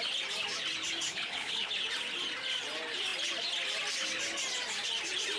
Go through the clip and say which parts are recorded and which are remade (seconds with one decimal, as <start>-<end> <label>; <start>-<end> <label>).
0.0-1.1 recorded; 1.1-1.7 remade; 1.7-5.4 recorded